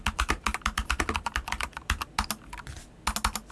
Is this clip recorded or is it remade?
recorded